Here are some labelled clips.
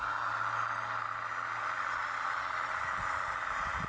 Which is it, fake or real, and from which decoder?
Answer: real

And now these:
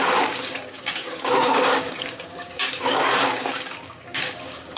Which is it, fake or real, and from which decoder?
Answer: fake, codec, DAC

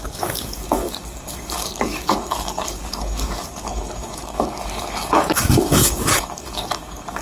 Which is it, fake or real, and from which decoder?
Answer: fake, codec, DAC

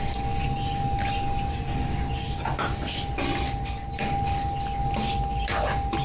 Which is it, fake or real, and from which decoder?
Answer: real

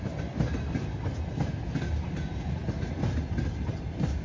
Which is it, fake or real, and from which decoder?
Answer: real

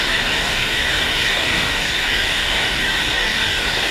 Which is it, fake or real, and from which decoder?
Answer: fake, codec, DAC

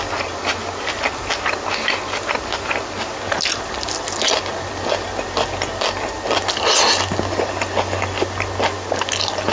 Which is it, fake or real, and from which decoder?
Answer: real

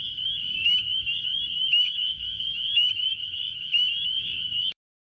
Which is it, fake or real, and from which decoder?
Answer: fake, codec, DAC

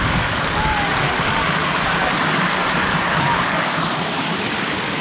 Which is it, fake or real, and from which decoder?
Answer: fake, codec, DAC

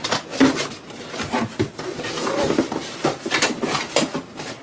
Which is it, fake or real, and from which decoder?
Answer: real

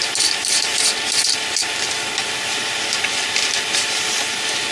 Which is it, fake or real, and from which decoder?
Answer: real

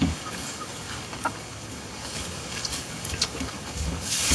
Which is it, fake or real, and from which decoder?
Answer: fake, codec, DAC